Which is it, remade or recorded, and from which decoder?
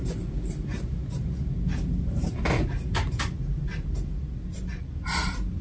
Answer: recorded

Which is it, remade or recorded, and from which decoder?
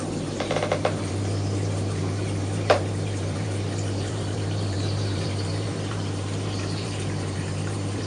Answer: remade, vocoder, BigVGAN v2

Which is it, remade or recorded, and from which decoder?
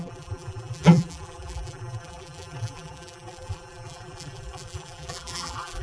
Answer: remade, vocoder, BigVGAN v2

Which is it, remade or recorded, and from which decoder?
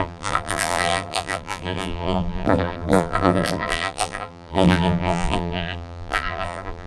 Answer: remade, vocoder, BigVGAN v2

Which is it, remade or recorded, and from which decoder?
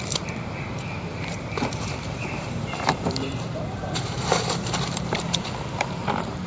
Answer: remade, vocoder, BigVGAN v2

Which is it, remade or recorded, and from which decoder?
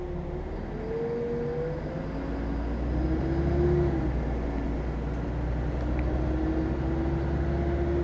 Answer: recorded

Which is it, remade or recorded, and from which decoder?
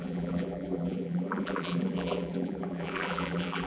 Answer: remade, vocoder, BigVGAN v2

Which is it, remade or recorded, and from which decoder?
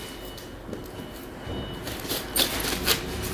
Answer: recorded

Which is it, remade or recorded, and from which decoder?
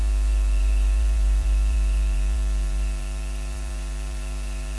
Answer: remade, vocoder, BigVGAN v2